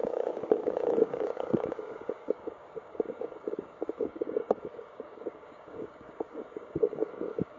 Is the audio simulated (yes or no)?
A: yes